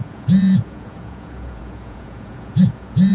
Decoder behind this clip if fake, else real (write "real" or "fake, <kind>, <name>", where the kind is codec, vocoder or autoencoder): fake, vocoder, Vocos